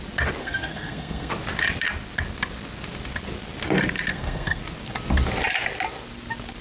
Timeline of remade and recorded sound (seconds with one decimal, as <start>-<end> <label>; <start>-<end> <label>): 0.0-0.4 recorded; 0.4-1.3 remade; 1.3-4.1 recorded; 4.1-4.6 remade; 4.6-6.6 recorded